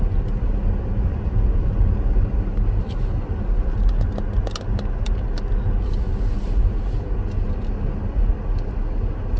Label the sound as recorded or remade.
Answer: recorded